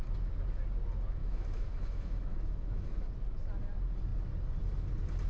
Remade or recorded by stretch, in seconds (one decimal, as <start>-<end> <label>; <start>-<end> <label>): 0.0-1.2 recorded; 1.2-3.1 remade; 3.1-5.3 recorded

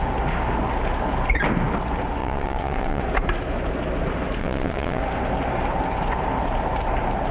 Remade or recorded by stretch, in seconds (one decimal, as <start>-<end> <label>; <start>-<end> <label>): 0.0-2.2 recorded; 2.2-3.0 remade; 3.0-4.4 recorded; 4.4-5.0 remade; 5.0-7.3 recorded

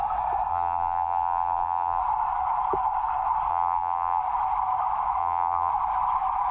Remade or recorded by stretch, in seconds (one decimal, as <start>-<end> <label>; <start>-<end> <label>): 0.0-0.5 recorded; 0.5-2.0 remade; 2.0-3.5 recorded; 3.5-4.2 remade; 4.2-5.2 recorded; 5.2-5.7 remade; 5.7-6.5 recorded

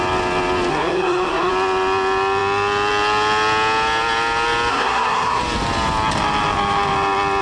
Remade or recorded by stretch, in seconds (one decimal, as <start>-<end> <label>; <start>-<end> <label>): 0.0-0.7 recorded; 0.7-1.5 remade; 1.5-4.7 recorded; 4.7-5.4 remade; 5.4-7.4 recorded